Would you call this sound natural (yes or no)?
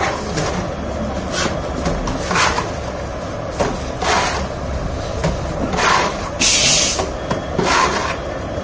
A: yes